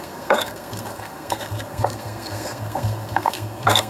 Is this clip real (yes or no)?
no